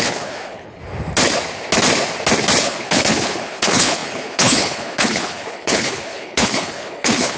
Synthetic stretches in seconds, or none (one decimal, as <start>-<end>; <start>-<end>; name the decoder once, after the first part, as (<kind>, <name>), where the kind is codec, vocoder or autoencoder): 0.0-0.8 (codec, HILCodec); 2.6-7.4